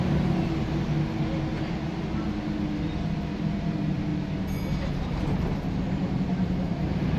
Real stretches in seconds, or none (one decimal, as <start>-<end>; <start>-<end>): 0.0-3.4; 4.1-4.9